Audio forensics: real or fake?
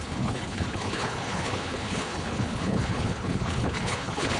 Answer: fake